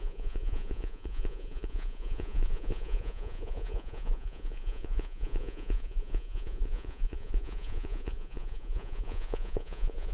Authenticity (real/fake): fake